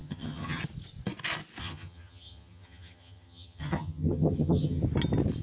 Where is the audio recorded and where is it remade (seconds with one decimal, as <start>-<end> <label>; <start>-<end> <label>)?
0.0-0.6 remade; 0.6-1.6 recorded; 1.6-4.8 remade; 4.8-5.4 recorded